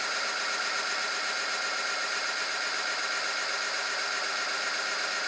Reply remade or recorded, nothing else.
recorded